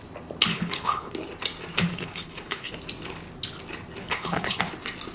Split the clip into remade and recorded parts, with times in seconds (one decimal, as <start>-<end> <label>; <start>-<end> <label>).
0.0-0.5 recorded; 0.5-1.1 remade; 1.1-1.9 recorded; 1.9-2.7 remade; 2.7-4.0 recorded; 4.0-4.6 remade; 4.6-5.1 recorded